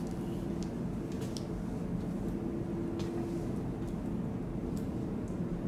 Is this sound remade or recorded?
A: recorded